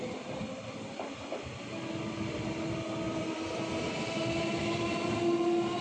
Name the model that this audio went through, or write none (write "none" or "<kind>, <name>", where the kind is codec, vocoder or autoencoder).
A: none